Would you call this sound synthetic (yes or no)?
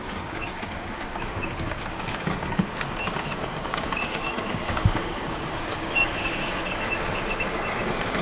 yes